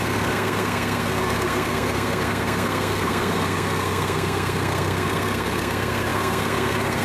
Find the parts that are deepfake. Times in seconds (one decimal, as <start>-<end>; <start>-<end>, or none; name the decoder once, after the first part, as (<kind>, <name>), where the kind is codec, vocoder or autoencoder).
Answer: 0.0-7.0 (codec, SNAC)

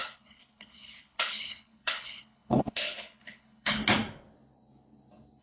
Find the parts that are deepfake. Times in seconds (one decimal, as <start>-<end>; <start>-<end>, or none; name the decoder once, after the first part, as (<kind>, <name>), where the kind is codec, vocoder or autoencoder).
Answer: 0.0-3.8 (codec, HILCodec)

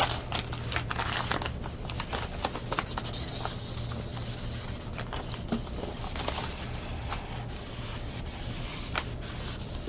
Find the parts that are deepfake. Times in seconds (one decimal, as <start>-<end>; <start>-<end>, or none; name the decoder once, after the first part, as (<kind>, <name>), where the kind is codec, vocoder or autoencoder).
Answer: none

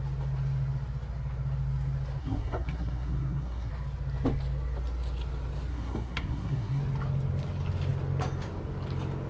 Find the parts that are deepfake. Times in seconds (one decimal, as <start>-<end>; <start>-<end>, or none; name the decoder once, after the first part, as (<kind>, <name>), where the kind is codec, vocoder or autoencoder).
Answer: 2.2-3.7 (codec, SNAC); 5.7-6.8

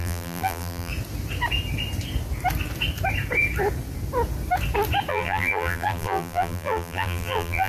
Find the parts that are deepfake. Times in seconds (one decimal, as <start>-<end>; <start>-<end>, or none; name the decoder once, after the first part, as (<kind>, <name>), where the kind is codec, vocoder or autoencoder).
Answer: 0.0-0.9 (vocoder, BigVGAN v2); 5.1-7.7

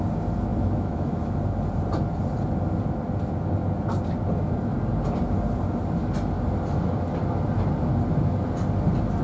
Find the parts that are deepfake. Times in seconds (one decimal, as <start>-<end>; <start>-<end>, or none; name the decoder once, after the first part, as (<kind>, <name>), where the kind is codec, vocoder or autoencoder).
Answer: 0.5-1.3 (autoencoder, DAC-VAE)

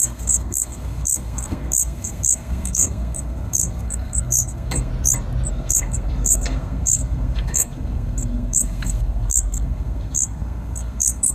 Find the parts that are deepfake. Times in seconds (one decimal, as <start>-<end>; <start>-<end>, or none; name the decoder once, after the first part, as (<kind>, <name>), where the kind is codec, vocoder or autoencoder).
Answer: 0.0-4.9 (codec, SNAC); 5.5-11.3

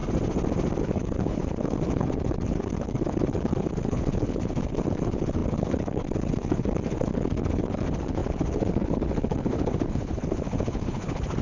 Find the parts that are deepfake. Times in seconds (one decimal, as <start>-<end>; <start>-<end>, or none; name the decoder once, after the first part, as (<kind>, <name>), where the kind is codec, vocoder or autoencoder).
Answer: 0.8-11.4 (codec, HILCodec)